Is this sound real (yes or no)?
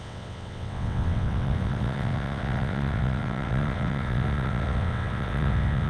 no